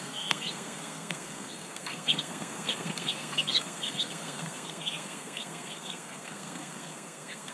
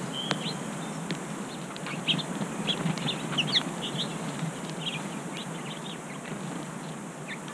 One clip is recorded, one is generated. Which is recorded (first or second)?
second